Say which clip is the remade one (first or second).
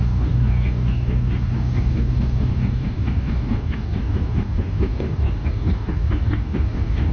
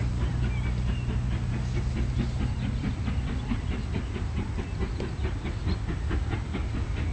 first